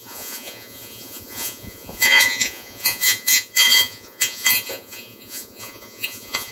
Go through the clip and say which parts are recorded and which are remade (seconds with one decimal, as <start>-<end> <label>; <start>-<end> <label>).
0.0-6.5 remade

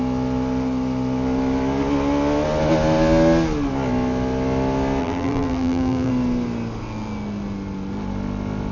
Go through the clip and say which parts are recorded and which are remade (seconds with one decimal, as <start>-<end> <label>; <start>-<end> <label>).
0.0-5.0 recorded; 5.0-6.1 remade; 6.1-8.7 recorded

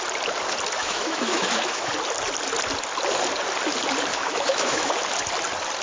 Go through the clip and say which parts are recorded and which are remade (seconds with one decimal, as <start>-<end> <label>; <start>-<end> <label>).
0.0-0.8 recorded; 0.8-1.9 remade; 1.9-4.1 recorded; 4.1-4.9 remade; 4.9-5.8 recorded

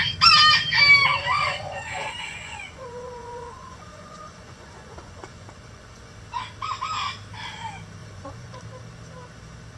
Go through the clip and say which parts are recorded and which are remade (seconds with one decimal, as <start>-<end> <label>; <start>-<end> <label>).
0.0-1.1 recorded; 1.1-6.2 remade; 6.2-8.0 recorded; 8.0-8.6 remade; 8.6-9.8 recorded

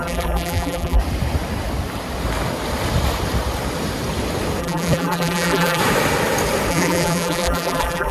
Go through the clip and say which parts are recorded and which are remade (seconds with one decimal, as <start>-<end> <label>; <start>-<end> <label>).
0.0-1.0 remade; 1.0-4.6 recorded; 4.6-5.8 remade; 5.8-6.7 recorded; 6.7-8.1 remade

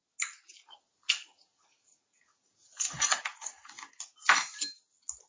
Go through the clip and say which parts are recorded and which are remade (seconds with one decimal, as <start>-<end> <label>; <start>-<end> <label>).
0.0-1.2 recorded; 1.2-3.9 remade; 3.9-5.3 recorded

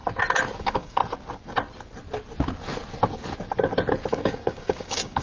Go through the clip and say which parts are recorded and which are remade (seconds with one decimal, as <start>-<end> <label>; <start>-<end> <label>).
0.0-0.6 recorded; 0.6-1.0 remade; 1.0-4.1 recorded; 4.1-5.2 remade